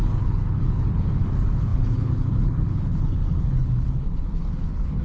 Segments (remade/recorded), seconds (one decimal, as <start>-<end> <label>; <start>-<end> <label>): 0.0-5.0 remade